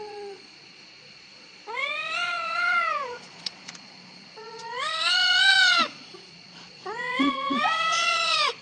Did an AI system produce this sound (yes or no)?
yes